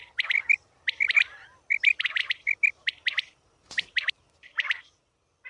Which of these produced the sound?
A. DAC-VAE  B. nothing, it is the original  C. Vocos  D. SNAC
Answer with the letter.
B